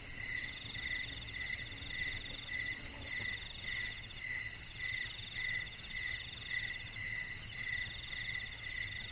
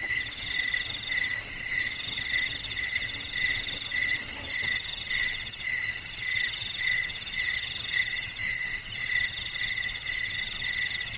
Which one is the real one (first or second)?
first